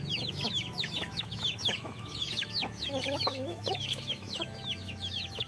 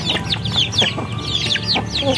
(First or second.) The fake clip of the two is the first